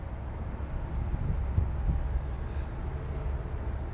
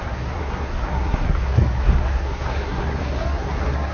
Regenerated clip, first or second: second